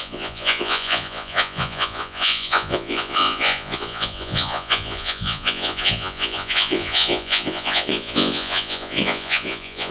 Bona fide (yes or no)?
no